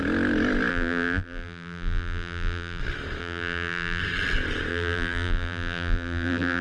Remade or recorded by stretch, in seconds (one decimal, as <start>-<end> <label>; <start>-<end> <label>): 0.0-0.7 recorded; 0.7-2.8 remade; 2.8-3.2 recorded; 3.2-4.0 remade; 4.0-4.7 recorded; 4.7-6.6 remade